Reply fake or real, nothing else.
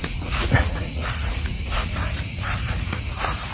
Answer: fake